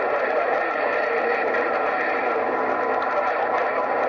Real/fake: real